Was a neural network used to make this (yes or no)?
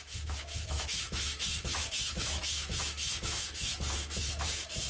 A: yes